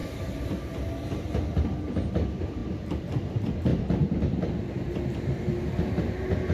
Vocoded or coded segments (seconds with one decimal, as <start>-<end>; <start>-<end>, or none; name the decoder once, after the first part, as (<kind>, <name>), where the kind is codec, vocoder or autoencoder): 2.6-3.3 (vocoder, BigVGAN v2)